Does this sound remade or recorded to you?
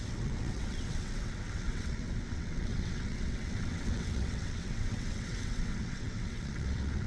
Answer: remade